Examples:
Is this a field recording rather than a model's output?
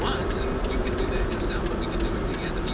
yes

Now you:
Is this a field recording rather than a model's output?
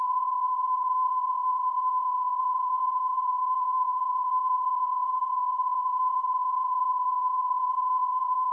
no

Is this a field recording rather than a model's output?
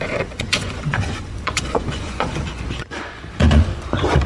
no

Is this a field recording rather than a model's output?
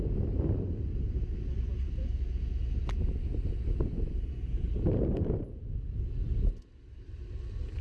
yes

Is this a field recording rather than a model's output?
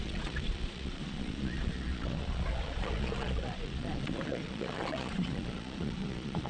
no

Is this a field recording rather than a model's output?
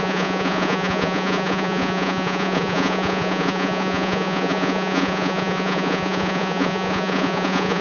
no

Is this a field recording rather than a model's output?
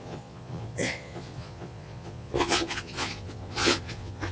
no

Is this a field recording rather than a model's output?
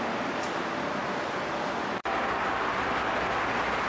yes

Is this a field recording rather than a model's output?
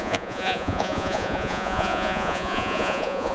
no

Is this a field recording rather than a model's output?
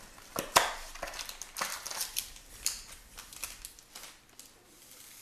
yes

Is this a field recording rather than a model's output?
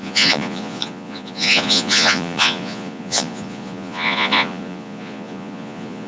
no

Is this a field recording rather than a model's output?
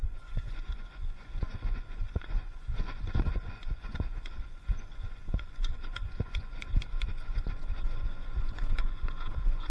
no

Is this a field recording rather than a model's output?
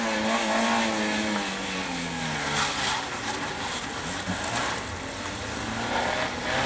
yes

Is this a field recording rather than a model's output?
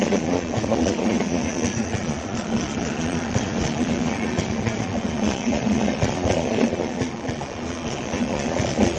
no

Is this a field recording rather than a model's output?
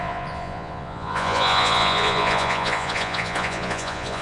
no